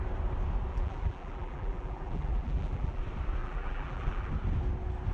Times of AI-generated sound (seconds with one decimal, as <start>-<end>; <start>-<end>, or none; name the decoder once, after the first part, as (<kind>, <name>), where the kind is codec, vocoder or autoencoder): 0.7-3.0 (vocoder, BigVGAN v2); 3.4-4.3